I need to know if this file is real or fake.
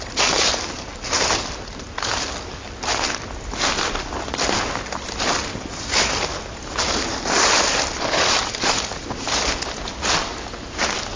real